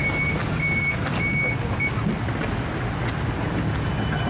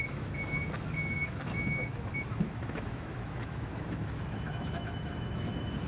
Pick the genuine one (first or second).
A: first